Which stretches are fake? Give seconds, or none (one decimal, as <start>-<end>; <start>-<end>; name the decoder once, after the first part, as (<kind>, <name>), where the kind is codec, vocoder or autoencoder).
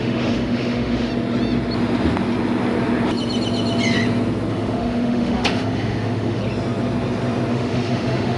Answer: 0.0-1.1 (autoencoder, DAC-VAE); 4.5-6.4; 7.5-8.4